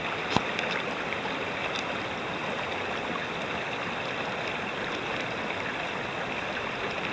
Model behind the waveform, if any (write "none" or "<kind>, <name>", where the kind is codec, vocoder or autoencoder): none